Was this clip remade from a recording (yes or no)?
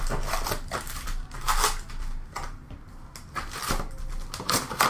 no